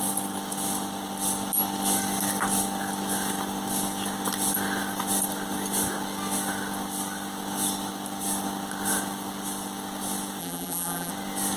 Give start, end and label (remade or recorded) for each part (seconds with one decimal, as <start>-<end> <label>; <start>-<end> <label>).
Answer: 0.0-10.4 recorded; 10.4-11.1 remade; 11.1-11.6 recorded